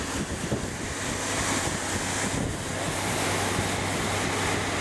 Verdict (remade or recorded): recorded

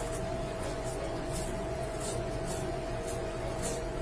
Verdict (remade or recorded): remade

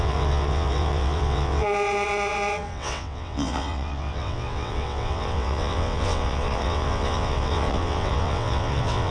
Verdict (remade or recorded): remade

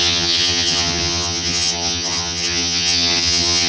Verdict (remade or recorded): remade